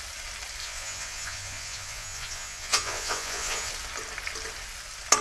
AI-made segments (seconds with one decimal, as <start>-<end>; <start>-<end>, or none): 0.6-3.7